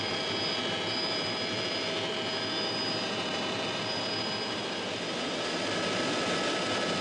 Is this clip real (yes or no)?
no